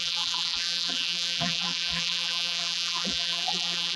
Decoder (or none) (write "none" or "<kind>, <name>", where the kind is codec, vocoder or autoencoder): vocoder, BigVGAN v2